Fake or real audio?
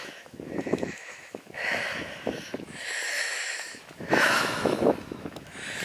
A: fake